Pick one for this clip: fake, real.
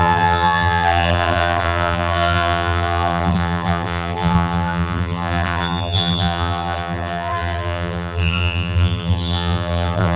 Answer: fake